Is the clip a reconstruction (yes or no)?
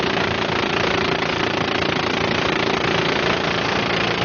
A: no